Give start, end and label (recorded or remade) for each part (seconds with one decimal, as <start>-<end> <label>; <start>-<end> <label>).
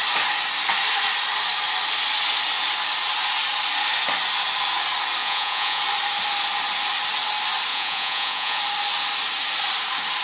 0.0-5.2 recorded; 5.2-5.8 remade; 5.8-7.7 recorded; 7.7-8.6 remade; 8.6-10.2 recorded